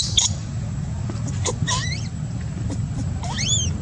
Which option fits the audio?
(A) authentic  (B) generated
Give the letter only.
B